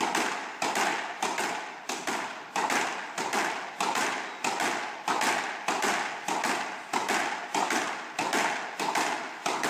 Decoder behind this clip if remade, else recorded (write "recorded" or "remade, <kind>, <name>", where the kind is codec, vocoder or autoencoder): recorded